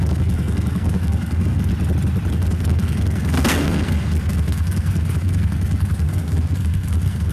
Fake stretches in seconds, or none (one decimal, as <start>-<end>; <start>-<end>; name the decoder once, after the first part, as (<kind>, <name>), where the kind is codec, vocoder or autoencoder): 0.0-1.7 (codec, SNAC); 2.3-7.3

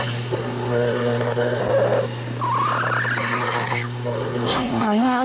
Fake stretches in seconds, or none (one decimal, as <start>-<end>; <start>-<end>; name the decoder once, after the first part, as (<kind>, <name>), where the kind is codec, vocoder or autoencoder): 0.0-1.6 (codec, SNAC); 3.2-5.2